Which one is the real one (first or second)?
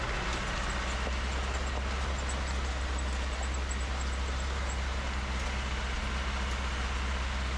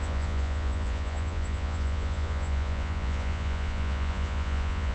first